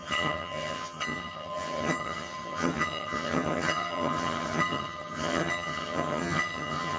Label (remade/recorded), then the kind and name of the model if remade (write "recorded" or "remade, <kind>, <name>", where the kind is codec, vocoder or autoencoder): remade, vocoder, HiFi-GAN